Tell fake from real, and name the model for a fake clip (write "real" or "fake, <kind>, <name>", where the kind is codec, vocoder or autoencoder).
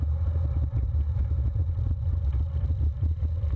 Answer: real